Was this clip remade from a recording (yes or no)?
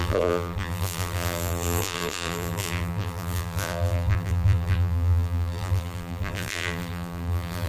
yes